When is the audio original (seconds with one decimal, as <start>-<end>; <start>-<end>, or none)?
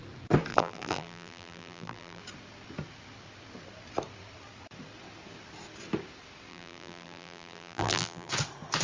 0.0-0.5; 2.2-6.5; 8.3-8.8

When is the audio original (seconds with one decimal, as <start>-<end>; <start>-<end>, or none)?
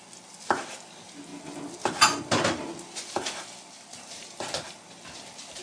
0.0-5.6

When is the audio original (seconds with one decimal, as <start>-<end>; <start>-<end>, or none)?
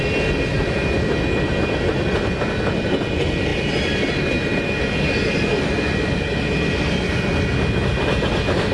0.0-8.7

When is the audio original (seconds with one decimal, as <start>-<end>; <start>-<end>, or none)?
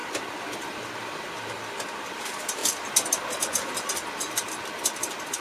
0.0-5.4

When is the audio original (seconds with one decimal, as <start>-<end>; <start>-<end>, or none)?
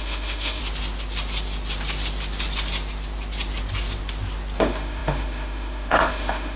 0.6-4.6